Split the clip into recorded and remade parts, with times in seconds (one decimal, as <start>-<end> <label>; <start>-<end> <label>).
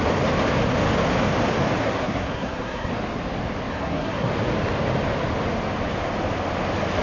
0.0-1.8 recorded; 1.8-2.9 remade; 2.9-3.7 recorded; 3.7-4.3 remade; 4.3-7.0 recorded